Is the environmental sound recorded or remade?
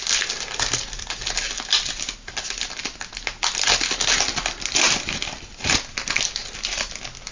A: recorded